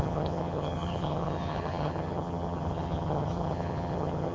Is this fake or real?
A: fake